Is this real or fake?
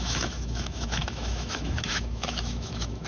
fake